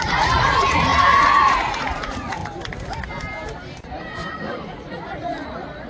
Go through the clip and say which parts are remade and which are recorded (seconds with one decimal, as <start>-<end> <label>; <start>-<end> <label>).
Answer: 0.0-2.4 remade; 2.4-4.3 recorded; 4.3-5.9 remade